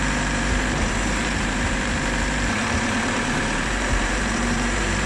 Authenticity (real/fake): fake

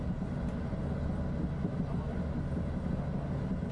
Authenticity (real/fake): real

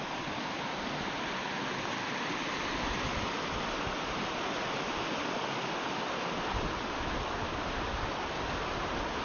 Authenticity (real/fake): real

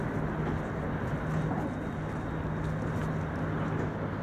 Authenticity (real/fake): real